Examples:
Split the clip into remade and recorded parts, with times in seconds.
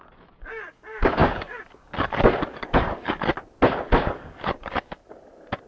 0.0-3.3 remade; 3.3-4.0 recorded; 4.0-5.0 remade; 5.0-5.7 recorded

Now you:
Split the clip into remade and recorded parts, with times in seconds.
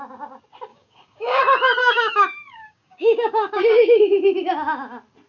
0.0-0.7 recorded; 0.7-1.4 remade; 1.4-1.8 recorded; 1.8-4.0 remade; 4.0-5.3 recorded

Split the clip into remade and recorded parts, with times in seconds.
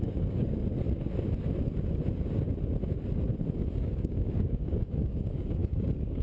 0.0-0.7 remade; 0.7-3.7 recorded; 3.7-6.2 remade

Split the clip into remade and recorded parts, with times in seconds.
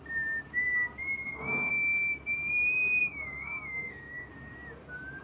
0.0-1.2 recorded; 1.2-1.7 remade; 1.7-3.0 recorded; 3.0-4.3 remade; 4.3-5.2 recorded